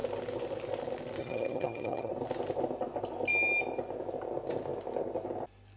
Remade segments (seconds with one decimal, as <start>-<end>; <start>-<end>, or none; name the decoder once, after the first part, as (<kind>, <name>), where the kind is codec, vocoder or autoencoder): 1.2-2.1 (vocoder, HiFi-GAN)